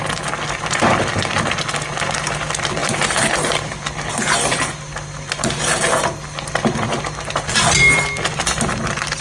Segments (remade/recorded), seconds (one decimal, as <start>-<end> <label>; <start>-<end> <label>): 0.0-9.2 recorded